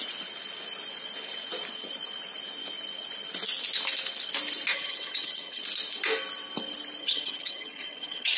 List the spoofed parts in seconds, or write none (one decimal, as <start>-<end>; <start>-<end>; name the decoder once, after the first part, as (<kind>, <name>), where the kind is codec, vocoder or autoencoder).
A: 4.7-5.6 (vocoder, HiFi-GAN); 7.0-8.4